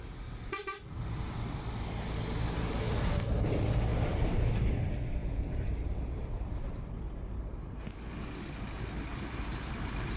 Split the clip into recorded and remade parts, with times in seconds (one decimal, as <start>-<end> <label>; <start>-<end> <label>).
0.0-3.9 recorded; 3.9-4.5 remade; 4.5-5.2 recorded; 5.2-7.8 remade; 7.8-9.1 recorded; 9.1-10.2 remade